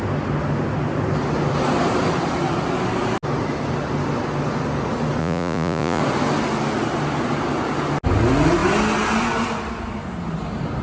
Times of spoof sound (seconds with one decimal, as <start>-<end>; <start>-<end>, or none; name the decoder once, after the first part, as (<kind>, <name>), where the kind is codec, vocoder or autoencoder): 5.2-6.0 (vocoder, Vocos)